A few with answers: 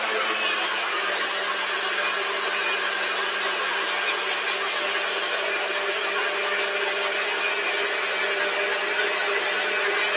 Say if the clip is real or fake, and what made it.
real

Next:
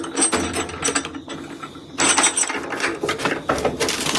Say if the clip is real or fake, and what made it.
real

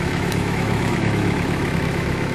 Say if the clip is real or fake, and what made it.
fake, autoencoder, DAC-VAE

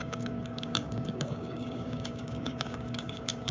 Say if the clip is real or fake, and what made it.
fake, codec, DAC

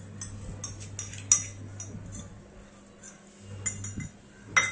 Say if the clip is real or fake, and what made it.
real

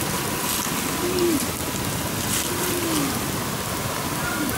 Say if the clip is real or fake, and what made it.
real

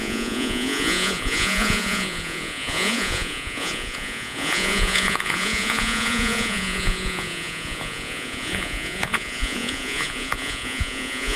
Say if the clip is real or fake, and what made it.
fake, vocoder, Vocos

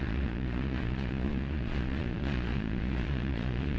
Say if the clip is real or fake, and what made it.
fake, vocoder, Vocos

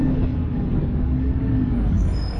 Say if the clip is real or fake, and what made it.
fake, codec, DAC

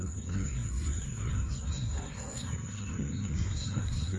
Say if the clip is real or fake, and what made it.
fake, codec, SNAC